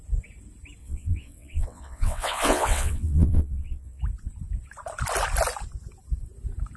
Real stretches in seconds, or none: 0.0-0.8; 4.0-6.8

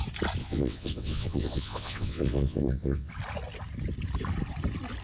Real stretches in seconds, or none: 0.0-0.4; 3.1-5.0

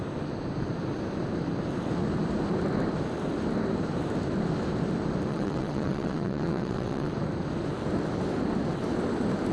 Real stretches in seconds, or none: 0.0-5.3; 7.1-9.5